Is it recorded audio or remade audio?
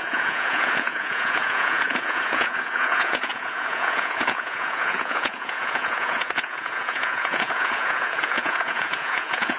remade